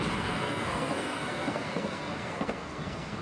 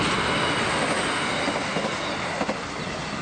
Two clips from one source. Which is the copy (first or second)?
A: first